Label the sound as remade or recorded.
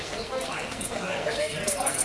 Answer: remade